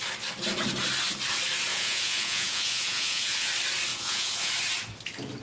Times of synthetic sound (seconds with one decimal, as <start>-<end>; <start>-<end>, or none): 1.7-3.5; 3.9-4.5